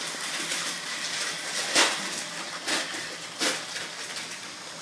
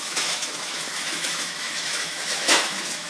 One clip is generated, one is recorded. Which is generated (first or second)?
second